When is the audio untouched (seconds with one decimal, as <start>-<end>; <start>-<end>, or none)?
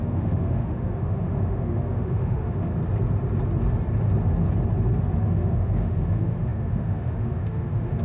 2.7-5.3